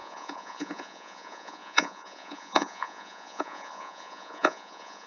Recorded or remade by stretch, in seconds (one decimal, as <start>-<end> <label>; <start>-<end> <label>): 0.0-5.1 remade